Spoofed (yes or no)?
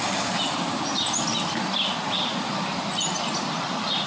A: no